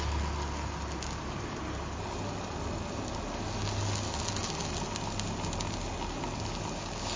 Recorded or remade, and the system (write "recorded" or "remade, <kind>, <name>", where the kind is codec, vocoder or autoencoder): recorded